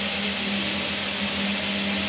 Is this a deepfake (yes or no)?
no